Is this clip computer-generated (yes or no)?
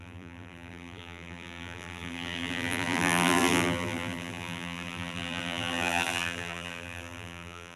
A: yes